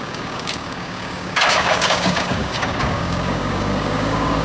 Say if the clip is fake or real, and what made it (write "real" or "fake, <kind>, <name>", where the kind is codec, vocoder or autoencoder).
fake, codec, DAC